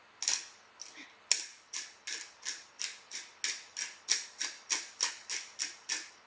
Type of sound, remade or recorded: recorded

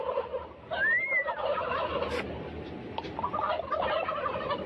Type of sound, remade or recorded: recorded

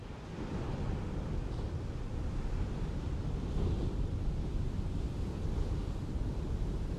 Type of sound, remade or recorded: remade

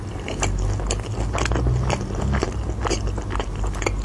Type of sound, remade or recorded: recorded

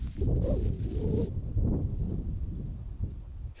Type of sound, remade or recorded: remade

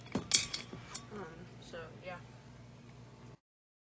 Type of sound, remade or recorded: recorded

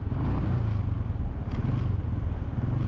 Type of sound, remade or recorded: recorded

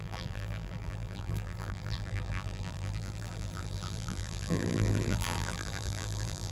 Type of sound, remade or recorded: remade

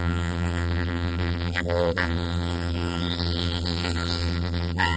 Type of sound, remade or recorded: remade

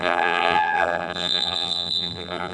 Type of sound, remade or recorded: remade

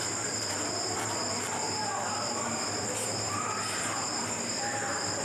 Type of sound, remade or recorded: remade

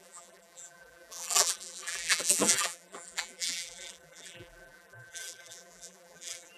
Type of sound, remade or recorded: remade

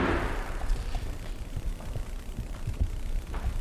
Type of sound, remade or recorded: remade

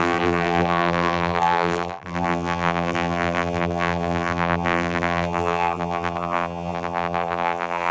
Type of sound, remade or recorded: remade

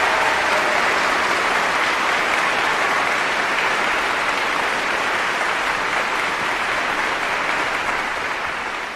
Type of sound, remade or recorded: recorded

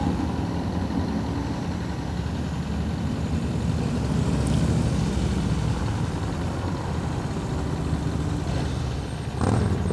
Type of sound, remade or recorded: recorded